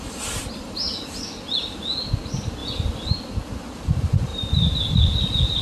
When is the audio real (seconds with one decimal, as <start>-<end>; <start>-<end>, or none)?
0.0-4.3